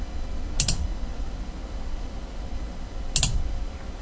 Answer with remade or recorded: recorded